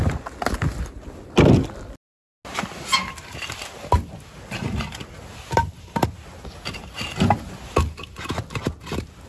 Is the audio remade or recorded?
recorded